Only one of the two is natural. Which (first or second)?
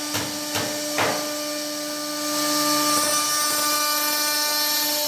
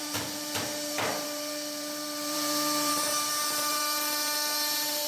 first